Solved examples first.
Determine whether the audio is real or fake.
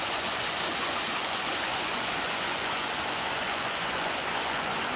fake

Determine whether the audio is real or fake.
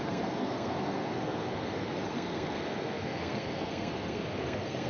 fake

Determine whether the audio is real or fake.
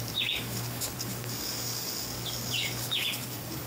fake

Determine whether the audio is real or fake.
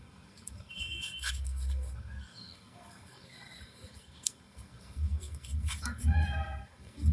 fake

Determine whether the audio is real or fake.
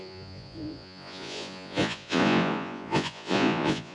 fake